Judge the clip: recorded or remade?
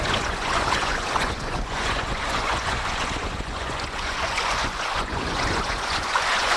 remade